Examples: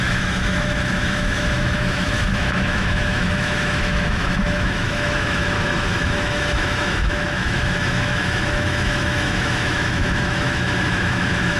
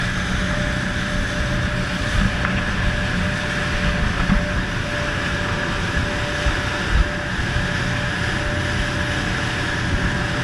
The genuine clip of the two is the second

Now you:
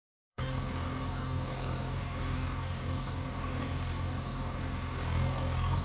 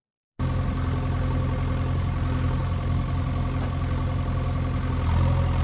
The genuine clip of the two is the second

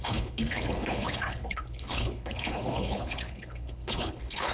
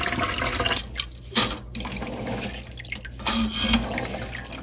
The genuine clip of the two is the second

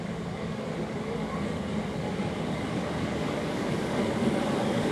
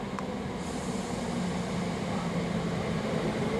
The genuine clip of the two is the second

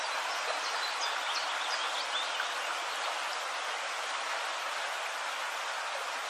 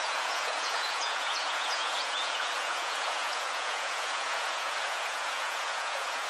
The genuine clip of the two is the first